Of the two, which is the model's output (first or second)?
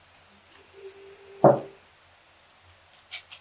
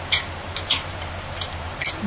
second